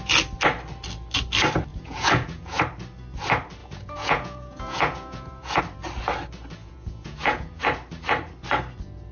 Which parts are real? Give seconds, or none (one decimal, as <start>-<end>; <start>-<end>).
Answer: 0.0-1.7; 2.6-3.6; 5.6-6.6; 7.5-9.1